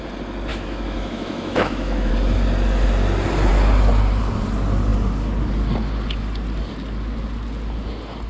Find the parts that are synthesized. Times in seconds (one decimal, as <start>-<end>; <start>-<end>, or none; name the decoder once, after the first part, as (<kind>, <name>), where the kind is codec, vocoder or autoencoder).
0.5-2.1 (autoencoder, DAC-VAE)